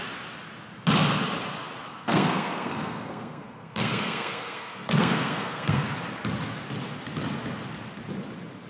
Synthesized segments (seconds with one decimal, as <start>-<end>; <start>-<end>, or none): 1.9-5.9